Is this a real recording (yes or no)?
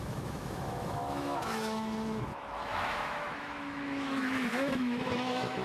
no